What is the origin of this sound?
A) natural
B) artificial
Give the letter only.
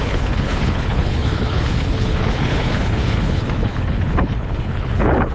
B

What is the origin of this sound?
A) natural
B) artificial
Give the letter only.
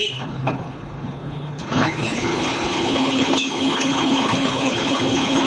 B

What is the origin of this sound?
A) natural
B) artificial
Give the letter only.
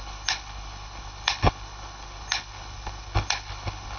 B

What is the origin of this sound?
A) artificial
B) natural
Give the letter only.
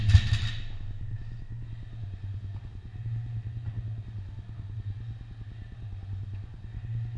B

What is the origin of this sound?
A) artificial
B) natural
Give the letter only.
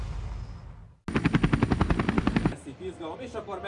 B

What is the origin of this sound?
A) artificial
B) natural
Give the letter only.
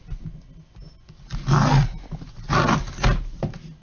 B